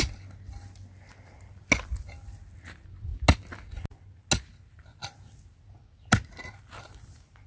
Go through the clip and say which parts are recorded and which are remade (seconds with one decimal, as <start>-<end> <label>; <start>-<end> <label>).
0.0-7.5 recorded